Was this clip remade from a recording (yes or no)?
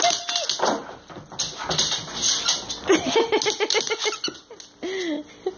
no